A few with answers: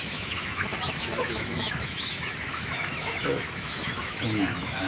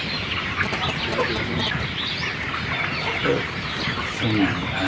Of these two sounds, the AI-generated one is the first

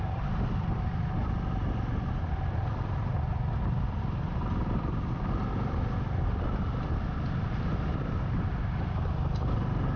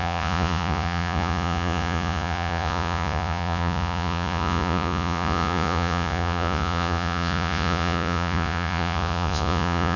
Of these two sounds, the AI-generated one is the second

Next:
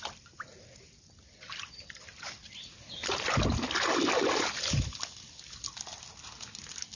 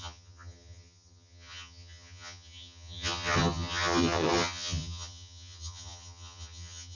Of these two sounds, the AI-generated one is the second